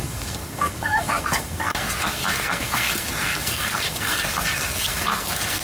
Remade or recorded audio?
remade